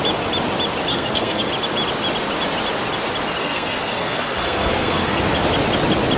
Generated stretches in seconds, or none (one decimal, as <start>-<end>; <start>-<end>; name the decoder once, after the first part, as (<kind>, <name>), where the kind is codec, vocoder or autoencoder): 0.9-1.5 (codec, SNAC); 3.4-5.2